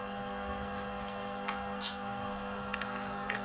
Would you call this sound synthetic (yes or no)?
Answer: yes